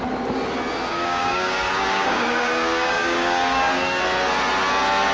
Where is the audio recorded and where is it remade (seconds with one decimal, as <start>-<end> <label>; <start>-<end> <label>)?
0.0-0.9 recorded; 0.9-4.0 remade; 4.0-5.1 recorded